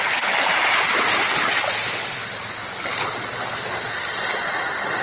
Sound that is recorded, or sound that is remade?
recorded